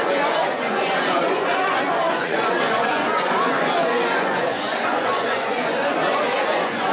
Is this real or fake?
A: fake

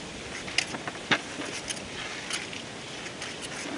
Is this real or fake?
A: real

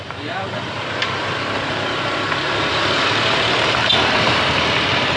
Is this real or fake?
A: fake